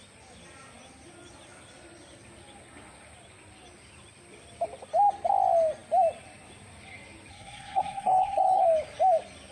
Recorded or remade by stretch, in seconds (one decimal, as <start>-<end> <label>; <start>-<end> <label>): 0.0-7.3 recorded; 7.3-8.6 remade; 8.6-9.5 recorded